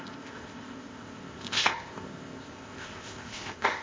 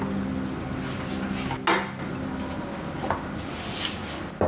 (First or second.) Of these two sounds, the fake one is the first